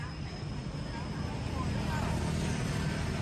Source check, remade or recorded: recorded